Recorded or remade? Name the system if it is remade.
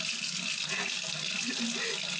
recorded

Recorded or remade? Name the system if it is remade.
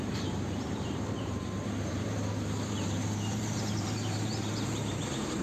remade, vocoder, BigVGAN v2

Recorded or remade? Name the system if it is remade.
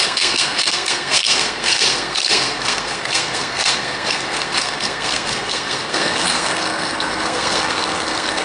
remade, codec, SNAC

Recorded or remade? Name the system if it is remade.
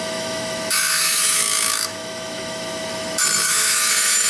remade, autoencoder, DAC-VAE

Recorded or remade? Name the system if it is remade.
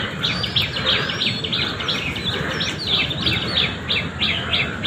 recorded